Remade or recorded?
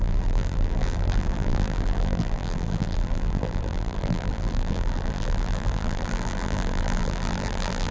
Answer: remade